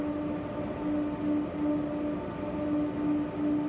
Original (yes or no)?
yes